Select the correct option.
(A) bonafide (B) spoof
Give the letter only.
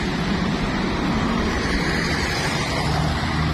B